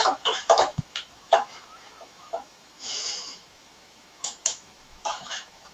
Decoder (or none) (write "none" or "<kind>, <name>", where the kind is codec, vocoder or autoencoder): autoencoder, DAC-VAE